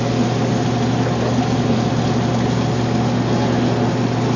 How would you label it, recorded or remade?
recorded